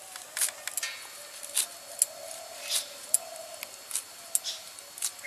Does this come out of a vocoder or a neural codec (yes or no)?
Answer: no